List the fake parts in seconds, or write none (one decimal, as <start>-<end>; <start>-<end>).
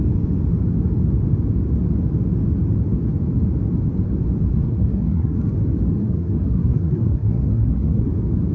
4.5-5.4; 6.0-8.1